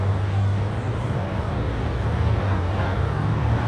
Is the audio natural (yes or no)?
no